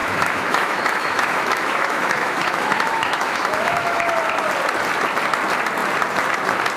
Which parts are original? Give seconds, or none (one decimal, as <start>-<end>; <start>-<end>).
4.1-6.8